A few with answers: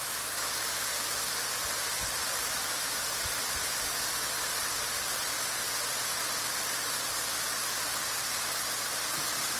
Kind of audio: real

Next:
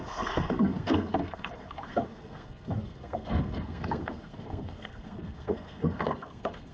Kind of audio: fake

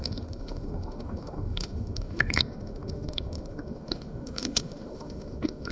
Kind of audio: fake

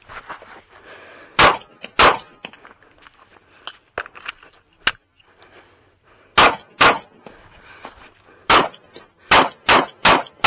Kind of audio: real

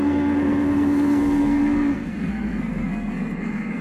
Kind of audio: fake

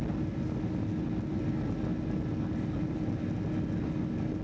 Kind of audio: real